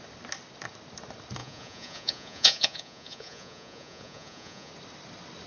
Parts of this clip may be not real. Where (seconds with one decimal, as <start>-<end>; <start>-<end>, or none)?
1.4-4.7